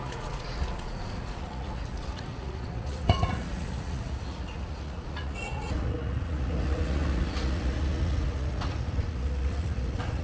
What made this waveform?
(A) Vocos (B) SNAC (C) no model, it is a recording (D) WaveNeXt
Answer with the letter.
A